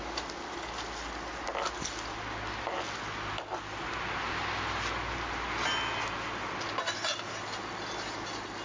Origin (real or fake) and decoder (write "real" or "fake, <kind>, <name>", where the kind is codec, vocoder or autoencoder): real